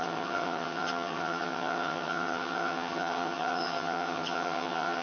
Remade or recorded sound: remade